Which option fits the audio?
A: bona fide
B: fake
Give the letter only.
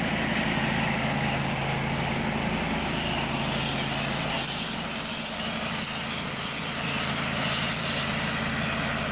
A